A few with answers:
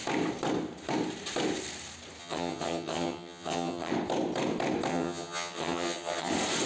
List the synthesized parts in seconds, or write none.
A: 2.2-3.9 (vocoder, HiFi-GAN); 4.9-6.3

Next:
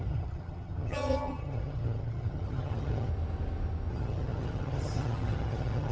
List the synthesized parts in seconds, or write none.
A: 0.0-3.1 (vocoder, HiFi-GAN); 3.9-5.9

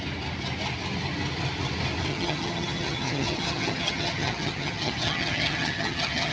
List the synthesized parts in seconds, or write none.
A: 2.1-6.3 (vocoder, HiFi-GAN)

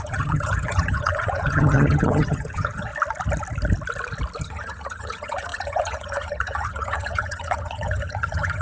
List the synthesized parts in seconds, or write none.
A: 0.0-2.9 (vocoder, HiFi-GAN); 4.4-8.6